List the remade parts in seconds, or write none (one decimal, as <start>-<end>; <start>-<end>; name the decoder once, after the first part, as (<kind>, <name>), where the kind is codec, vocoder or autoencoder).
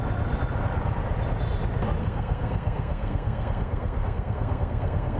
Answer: 2.0-5.2 (codec, SNAC)